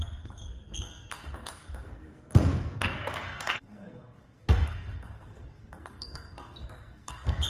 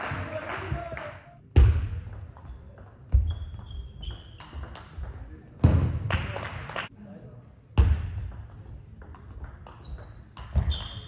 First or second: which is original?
second